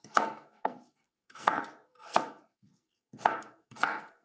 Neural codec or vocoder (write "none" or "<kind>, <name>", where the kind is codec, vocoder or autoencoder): codec, SNAC